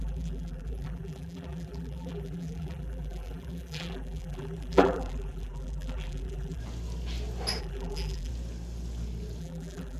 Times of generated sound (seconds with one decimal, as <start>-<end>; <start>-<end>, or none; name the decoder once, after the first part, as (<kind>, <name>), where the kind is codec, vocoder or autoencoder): 0.0-6.6 (vocoder, BigVGAN v2); 7.6-8.3; 9.4-10.0